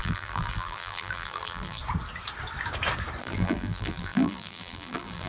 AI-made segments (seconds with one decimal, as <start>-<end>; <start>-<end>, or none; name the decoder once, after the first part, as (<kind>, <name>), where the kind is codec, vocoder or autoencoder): 0.0-1.8 (vocoder, BigVGAN v2); 3.2-5.3